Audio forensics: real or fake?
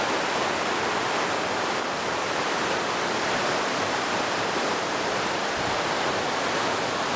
real